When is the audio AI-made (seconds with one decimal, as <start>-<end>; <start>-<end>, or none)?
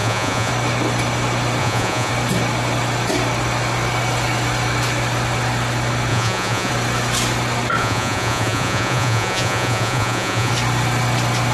0.0-0.5; 1.6-2.1; 6.1-6.7; 7.8-10.5